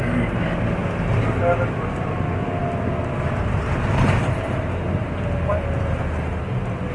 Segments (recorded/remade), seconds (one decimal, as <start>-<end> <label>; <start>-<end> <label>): 0.0-6.9 recorded